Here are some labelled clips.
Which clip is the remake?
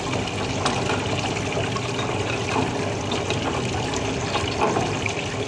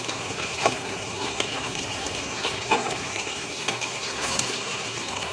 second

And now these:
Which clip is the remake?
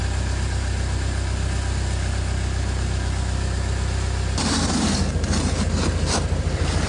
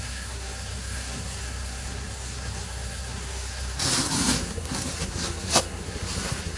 second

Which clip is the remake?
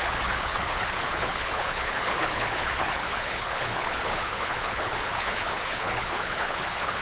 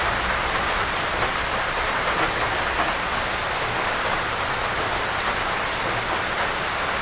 first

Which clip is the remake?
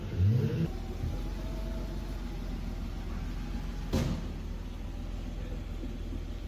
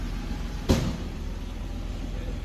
second